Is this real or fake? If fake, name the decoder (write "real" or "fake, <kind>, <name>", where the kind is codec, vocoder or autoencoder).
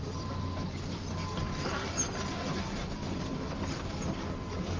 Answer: fake, vocoder, BigVGAN v2